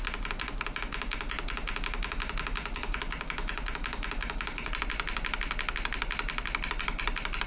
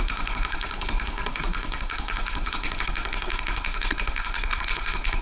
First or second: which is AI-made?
second